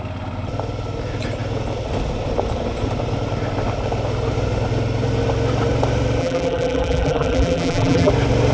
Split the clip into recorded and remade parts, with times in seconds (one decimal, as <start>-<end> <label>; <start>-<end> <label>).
0.0-6.2 recorded; 6.2-8.1 remade; 8.1-8.5 recorded